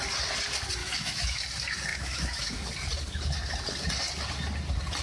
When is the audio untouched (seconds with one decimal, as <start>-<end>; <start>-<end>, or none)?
0.0-0.8; 1.4-1.9; 2.7-5.0